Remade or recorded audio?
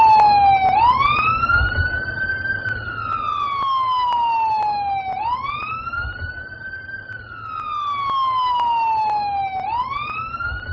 recorded